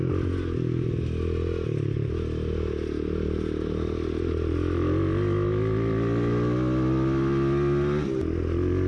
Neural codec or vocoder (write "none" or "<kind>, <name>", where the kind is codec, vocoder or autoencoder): none